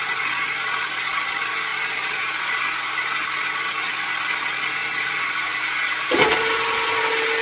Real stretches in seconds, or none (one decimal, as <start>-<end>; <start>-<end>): 0.0-1.7; 2.3-4.8; 6.3-7.4